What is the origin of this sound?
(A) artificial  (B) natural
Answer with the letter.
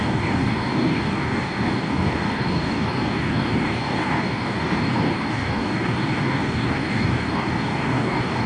A